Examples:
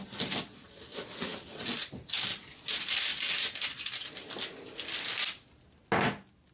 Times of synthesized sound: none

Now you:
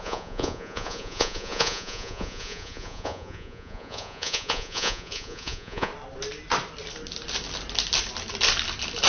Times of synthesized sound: 0.0-5.9 (vocoder, Vocos)

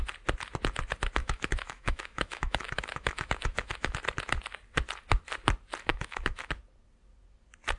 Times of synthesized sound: 1.2-4.0 (autoencoder, DAC-VAE); 5.9-6.5

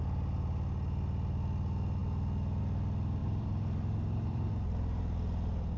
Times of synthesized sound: 3.2-4.5 (vocoder, BigVGAN v2)

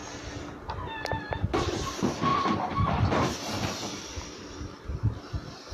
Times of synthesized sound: 2.3-5.2 (vocoder, BigVGAN v2)

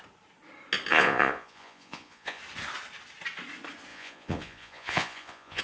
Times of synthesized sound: 0.9-2.4 (vocoder, Vocos); 3.9-5.6

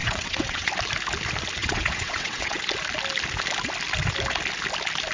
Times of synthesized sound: 0.0-0.7 (vocoder, WaveNeXt); 1.6-2.6

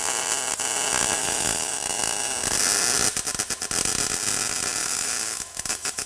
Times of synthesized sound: 1.2-1.7 (autoencoder, DAC-VAE); 4.8-6.1